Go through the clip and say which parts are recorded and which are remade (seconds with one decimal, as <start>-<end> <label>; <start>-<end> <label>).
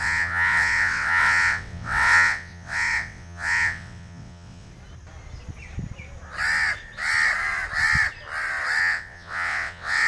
0.0-4.7 remade; 4.7-8.8 recorded; 8.8-10.1 remade